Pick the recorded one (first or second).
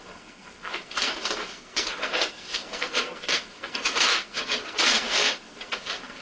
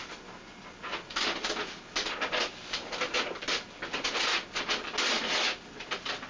second